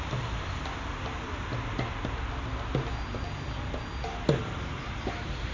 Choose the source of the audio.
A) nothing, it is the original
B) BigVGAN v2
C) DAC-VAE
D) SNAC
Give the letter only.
A